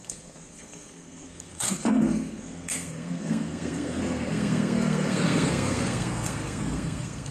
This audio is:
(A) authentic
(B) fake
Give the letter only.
B